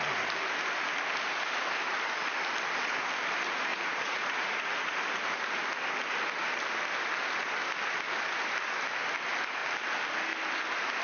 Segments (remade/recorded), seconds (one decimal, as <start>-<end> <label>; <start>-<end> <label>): 0.0-3.7 recorded; 3.7-5.0 remade; 5.0-11.0 recorded